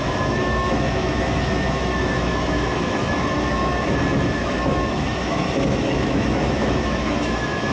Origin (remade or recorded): remade